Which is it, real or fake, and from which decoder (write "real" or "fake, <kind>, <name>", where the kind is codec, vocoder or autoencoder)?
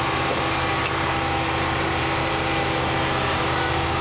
real